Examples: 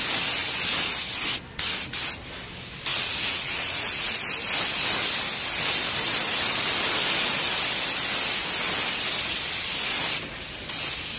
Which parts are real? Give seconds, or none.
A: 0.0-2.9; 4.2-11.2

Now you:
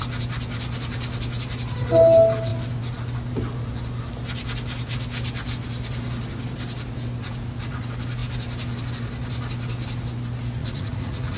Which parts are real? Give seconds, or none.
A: 0.0-10.6

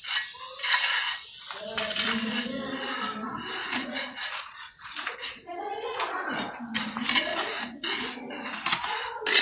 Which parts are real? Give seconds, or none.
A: 0.0-3.6; 6.0-7.3; 8.0-9.4

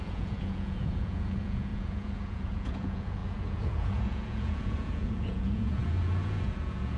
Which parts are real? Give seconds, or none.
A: none

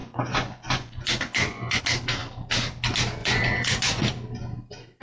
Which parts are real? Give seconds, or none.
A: 1.8-3.2; 4.0-5.0

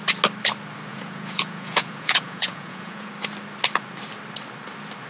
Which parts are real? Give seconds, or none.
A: 0.0-0.9; 3.1-5.1